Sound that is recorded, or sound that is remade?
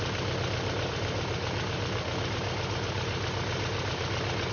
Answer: recorded